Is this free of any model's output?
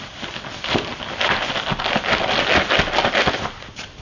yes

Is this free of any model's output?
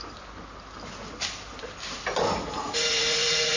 yes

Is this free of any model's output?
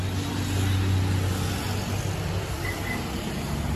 yes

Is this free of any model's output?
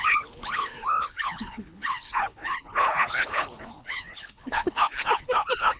no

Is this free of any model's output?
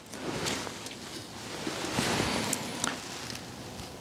yes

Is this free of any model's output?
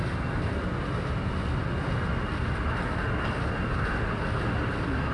yes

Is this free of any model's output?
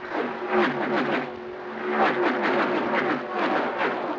yes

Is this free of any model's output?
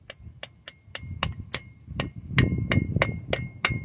yes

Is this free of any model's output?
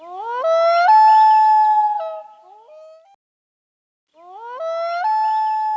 yes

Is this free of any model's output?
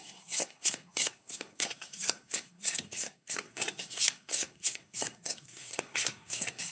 no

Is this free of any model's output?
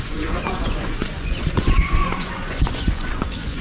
no